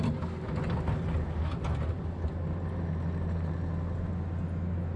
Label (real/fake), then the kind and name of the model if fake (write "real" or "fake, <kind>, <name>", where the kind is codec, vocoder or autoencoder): real